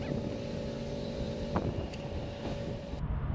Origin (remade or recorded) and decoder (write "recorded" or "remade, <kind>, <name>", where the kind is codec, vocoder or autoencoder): remade, vocoder, BigVGAN v2